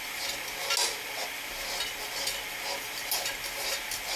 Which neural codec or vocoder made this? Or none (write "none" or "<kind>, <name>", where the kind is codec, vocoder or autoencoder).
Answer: none